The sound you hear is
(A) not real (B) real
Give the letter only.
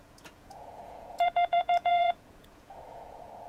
A